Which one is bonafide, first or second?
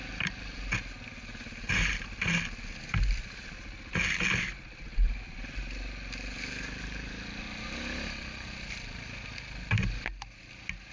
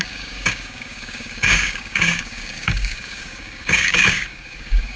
first